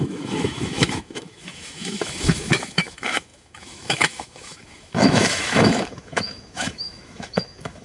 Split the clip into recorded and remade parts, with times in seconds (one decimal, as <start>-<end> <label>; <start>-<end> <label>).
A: 0.0-7.8 remade